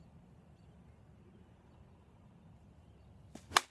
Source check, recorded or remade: recorded